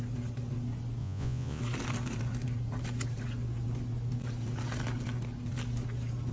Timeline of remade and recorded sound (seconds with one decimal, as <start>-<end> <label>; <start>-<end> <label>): 0.0-1.0 recorded; 1.0-1.6 remade; 1.6-6.3 recorded